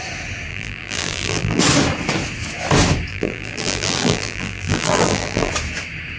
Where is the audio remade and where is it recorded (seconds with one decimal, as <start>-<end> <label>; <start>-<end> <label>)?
0.0-0.5 recorded; 0.5-1.6 remade; 1.6-3.1 recorded; 3.1-5.5 remade; 5.5-6.2 recorded